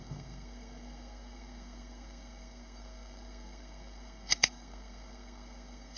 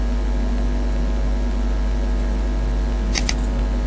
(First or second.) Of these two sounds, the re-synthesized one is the first